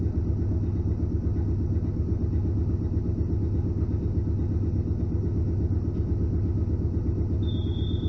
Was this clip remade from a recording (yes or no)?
no